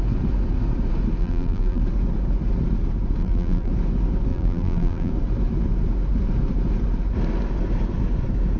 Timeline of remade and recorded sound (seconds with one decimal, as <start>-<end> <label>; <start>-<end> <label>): 0.0-1.2 recorded; 1.2-1.8 remade; 1.8-3.2 recorded; 3.2-3.7 remade; 3.7-4.3 recorded; 4.3-5.1 remade; 5.1-8.6 recorded